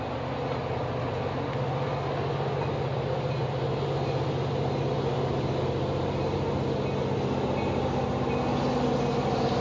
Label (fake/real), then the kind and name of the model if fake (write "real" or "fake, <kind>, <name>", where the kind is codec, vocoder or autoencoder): real